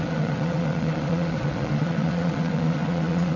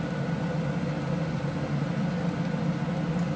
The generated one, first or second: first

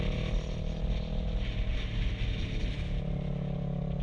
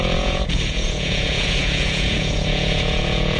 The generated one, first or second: second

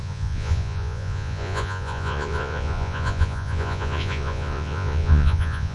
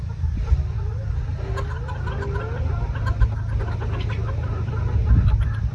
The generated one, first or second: first